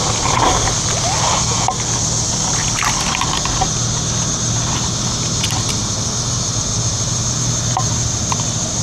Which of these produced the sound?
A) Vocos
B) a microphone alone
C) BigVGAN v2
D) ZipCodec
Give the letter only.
B